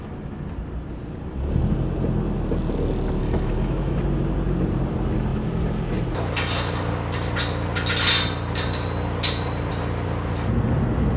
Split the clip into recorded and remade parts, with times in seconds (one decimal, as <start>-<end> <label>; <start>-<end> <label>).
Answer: 0.0-3.2 recorded; 3.2-4.0 remade; 4.0-11.2 recorded